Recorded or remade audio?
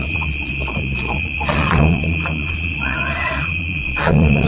remade